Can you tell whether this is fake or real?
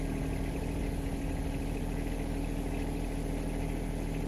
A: real